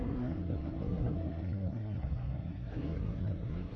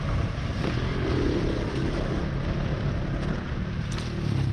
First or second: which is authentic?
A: second